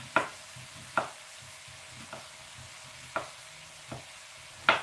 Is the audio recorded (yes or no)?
yes